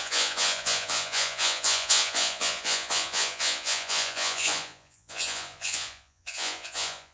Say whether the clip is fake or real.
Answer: fake